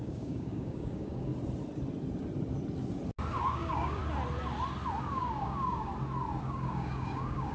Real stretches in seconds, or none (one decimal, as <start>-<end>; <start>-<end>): 1.3-3.4; 4.0-5.0; 5.9-6.4